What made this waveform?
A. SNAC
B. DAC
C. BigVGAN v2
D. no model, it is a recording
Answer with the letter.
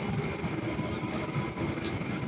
D